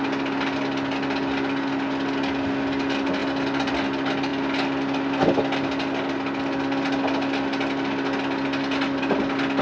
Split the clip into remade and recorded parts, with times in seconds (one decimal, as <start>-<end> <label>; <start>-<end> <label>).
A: 0.0-9.6 recorded